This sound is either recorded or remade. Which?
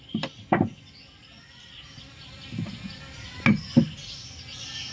recorded